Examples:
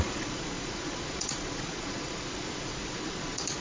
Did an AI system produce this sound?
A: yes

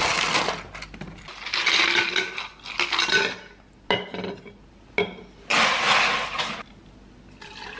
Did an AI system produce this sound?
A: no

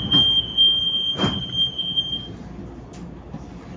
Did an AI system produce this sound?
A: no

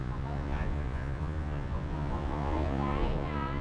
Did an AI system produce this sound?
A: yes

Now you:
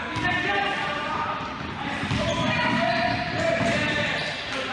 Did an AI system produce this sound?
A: no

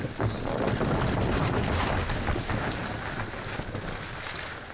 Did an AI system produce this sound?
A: no